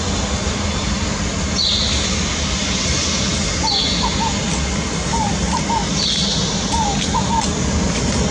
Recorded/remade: recorded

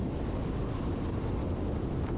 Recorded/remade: recorded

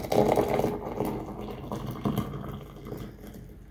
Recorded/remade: recorded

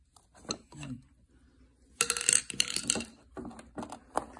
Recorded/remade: recorded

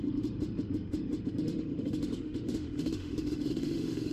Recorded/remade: remade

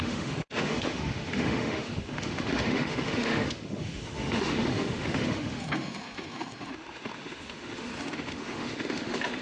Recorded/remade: remade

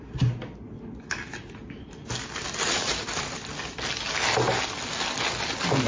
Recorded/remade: recorded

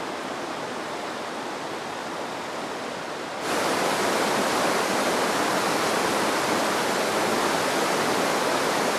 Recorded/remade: recorded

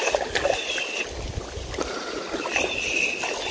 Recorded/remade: recorded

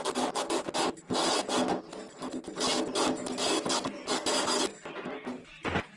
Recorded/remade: recorded